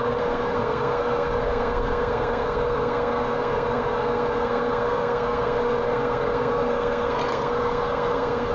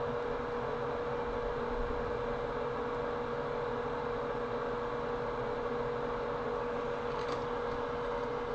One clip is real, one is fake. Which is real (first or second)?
second